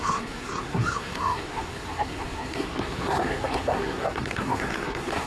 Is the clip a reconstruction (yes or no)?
yes